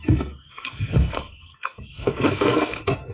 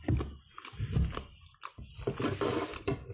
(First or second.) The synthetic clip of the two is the first